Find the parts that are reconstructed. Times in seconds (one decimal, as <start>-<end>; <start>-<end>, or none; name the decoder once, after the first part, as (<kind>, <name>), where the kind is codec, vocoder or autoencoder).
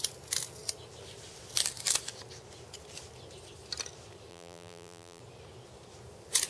4.3-5.2 (vocoder, BigVGAN v2)